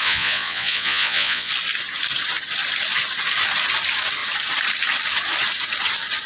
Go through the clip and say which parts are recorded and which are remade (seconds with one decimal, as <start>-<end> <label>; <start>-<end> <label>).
0.0-1.5 remade; 1.5-6.3 recorded